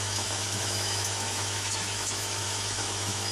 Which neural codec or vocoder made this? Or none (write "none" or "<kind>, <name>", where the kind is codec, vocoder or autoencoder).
autoencoder, DAC-VAE